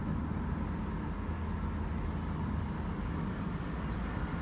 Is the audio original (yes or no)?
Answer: yes